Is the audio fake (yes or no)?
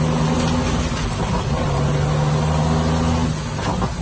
no